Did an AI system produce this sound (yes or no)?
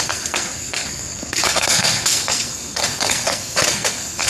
yes